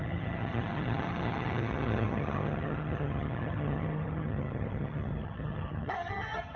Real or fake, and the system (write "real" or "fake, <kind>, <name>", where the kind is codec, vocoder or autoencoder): fake, vocoder, HiFi-GAN